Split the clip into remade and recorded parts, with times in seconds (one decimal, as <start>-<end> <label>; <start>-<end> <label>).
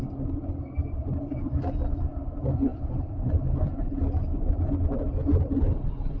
0.0-2.7 recorded; 2.7-4.0 remade; 4.0-5.2 recorded; 5.2-6.2 remade